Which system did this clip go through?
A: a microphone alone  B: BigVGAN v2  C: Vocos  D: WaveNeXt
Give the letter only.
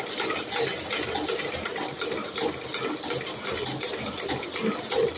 A